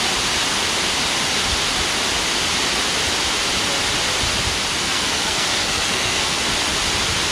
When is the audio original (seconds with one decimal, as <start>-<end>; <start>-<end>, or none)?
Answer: 0.0-4.8; 6.4-7.3